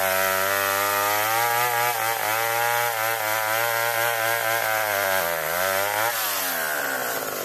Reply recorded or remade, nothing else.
recorded